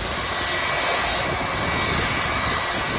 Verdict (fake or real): real